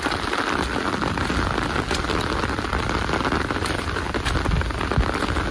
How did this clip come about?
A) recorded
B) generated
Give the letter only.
A